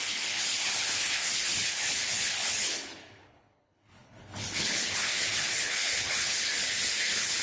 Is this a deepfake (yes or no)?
yes